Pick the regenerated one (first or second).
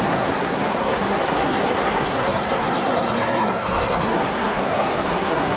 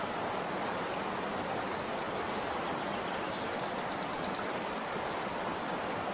first